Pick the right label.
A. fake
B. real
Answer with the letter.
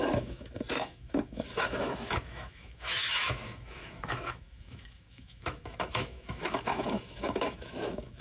A